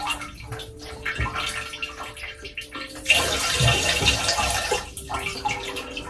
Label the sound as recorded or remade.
recorded